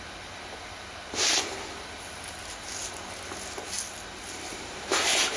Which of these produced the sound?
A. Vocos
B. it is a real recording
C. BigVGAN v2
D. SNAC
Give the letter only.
B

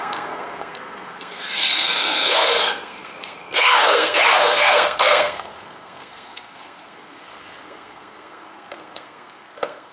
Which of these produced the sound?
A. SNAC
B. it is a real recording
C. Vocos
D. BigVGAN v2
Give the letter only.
A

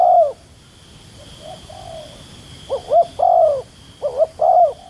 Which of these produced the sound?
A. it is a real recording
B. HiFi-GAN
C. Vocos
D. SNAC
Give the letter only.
A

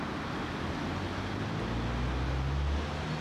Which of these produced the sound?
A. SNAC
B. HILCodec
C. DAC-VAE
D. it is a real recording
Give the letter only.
D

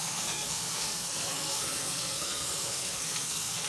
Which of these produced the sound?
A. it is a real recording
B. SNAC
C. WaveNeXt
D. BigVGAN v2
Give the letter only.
B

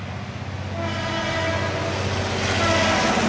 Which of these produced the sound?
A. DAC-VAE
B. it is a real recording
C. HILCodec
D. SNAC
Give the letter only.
B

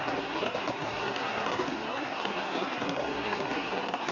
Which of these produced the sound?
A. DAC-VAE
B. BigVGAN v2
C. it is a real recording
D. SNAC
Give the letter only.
D